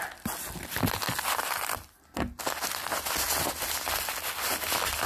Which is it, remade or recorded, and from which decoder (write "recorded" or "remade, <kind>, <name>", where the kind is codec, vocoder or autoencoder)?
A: recorded